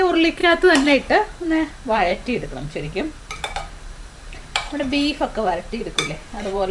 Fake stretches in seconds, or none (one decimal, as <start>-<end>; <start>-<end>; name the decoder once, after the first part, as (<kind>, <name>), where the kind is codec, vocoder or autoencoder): 0.0-6.7 (vocoder, BigVGAN v2)